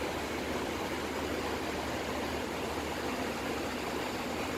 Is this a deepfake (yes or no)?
no